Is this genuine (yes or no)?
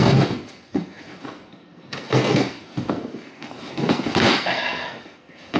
no